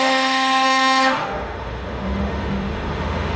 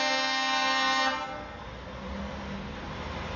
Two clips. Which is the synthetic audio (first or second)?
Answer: first